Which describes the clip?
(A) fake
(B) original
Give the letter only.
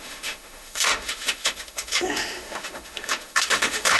A